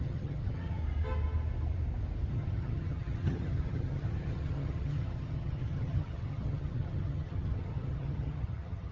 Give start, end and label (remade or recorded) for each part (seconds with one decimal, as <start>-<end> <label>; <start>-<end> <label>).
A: 0.0-0.8 remade; 0.8-2.3 recorded; 2.3-8.9 remade